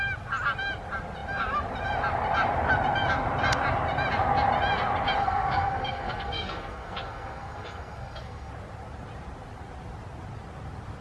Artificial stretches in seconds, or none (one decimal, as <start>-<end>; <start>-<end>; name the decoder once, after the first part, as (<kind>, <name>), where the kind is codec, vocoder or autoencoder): 5.2-8.5 (codec, SNAC)